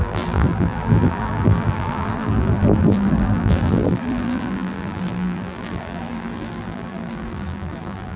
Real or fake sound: fake